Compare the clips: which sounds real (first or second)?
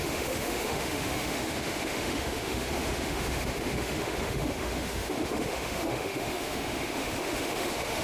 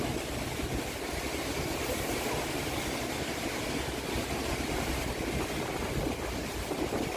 second